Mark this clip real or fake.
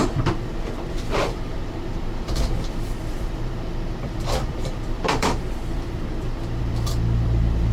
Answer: fake